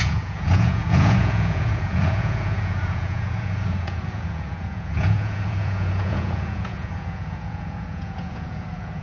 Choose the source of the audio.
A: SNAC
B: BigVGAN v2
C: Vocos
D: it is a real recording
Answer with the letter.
C